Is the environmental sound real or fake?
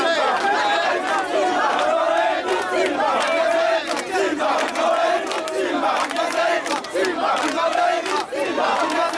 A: real